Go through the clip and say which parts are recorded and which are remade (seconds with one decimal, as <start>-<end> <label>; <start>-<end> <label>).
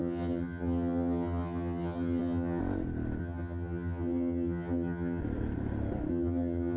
0.0-2.6 remade; 2.6-3.2 recorded; 3.2-5.2 remade; 5.2-6.1 recorded; 6.1-6.8 remade